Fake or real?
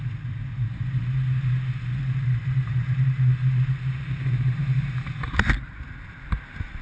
real